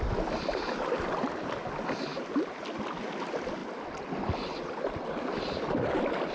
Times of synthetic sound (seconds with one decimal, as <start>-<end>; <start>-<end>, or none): none

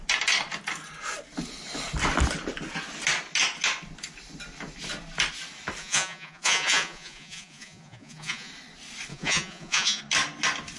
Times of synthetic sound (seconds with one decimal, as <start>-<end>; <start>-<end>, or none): 5.8-8.5; 9.1-10.0

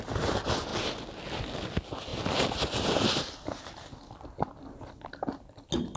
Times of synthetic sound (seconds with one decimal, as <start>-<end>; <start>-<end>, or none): none

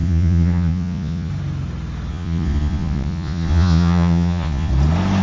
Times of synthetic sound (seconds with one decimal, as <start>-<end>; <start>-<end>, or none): 0.0-1.3; 2.1-4.7

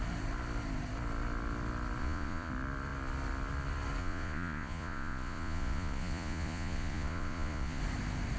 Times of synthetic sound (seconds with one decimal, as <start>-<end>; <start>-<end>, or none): 2.0-2.5; 4.0-7.8

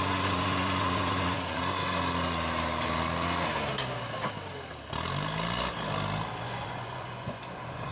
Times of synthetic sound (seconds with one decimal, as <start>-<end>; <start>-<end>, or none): 0.0-1.8; 6.4-7.9

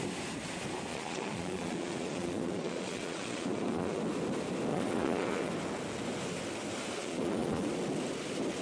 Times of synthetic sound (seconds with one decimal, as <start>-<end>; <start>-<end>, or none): 0.9-4.0; 4.7-5.5; 7.0-7.7